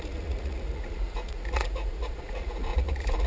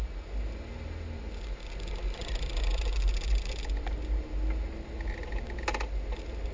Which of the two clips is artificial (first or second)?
first